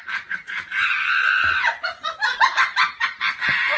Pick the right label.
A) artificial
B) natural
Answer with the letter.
A